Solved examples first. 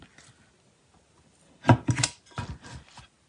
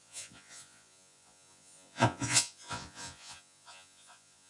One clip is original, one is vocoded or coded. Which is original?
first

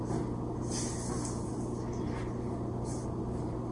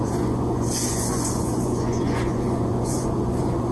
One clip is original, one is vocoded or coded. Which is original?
first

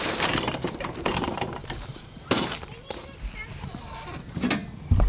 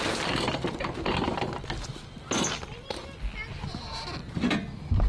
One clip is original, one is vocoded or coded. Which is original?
second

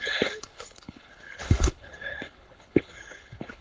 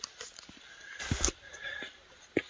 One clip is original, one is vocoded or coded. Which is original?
second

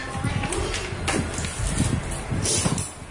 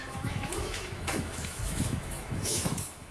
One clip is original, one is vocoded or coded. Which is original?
first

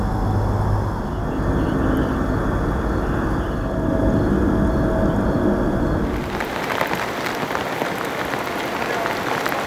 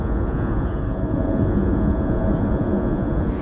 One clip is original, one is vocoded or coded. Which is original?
first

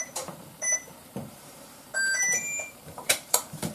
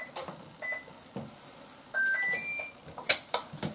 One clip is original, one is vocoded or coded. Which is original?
second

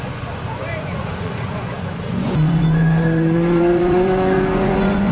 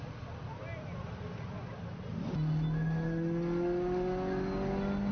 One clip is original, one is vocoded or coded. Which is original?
second